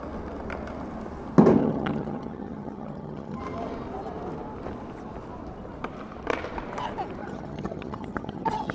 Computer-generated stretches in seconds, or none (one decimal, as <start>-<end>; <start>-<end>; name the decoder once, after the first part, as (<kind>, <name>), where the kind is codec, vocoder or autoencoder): 1.6-3.4 (vocoder, HiFi-GAN); 7.2-8.7